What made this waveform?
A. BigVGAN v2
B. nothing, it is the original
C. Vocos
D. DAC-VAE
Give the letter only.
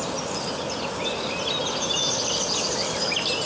B